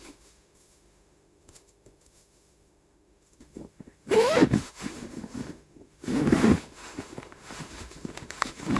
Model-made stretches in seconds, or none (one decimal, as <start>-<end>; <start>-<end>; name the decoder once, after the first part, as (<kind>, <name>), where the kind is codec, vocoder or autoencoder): 0.0-8.8 (autoencoder, DAC-VAE)